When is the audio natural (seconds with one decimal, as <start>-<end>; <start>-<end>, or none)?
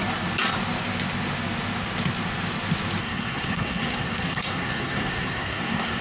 0.0-3.0